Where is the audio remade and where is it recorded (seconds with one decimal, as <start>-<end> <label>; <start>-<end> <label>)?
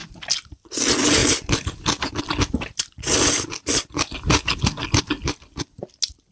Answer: 0.0-6.3 recorded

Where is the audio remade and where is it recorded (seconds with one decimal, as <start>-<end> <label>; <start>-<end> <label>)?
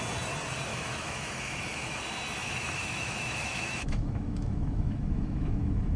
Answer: 0.0-0.7 recorded; 0.7-2.0 remade; 2.0-2.4 recorded; 2.4-6.0 remade